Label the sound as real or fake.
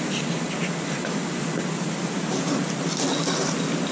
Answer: real